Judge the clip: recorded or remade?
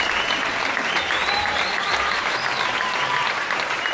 remade